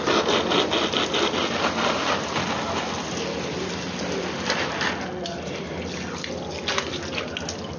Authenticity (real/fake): real